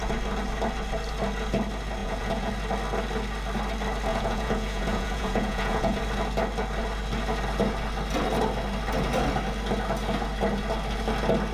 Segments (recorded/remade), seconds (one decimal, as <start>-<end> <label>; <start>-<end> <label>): 0.0-2.0 recorded; 2.0-2.5 remade; 2.5-4.1 recorded; 4.1-6.0 remade; 6.0-11.5 recorded